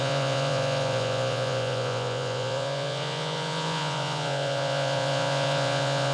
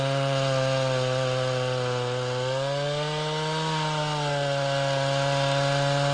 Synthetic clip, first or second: first